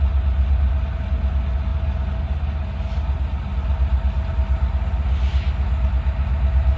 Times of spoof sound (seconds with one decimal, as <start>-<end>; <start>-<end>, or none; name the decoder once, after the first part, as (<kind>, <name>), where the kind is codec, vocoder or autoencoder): none